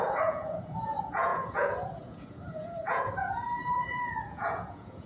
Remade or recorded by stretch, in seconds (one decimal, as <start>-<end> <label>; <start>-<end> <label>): 0.0-5.1 remade